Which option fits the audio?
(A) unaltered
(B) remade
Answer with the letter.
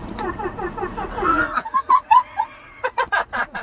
B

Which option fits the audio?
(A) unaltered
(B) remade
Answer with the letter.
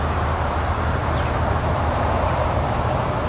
B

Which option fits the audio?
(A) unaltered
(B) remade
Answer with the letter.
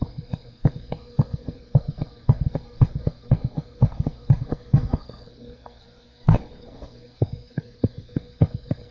B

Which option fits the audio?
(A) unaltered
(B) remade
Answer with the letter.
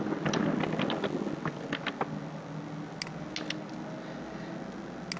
A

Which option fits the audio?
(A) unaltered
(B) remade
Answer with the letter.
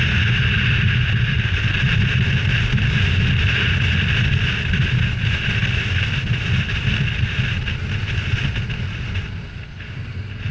A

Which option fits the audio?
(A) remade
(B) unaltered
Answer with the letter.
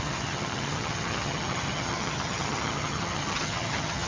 A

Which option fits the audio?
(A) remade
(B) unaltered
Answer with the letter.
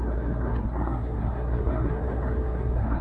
A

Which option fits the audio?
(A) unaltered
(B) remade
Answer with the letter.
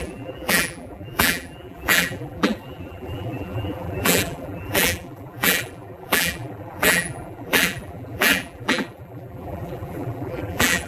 B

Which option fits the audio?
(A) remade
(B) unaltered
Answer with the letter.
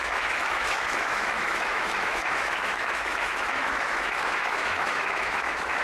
A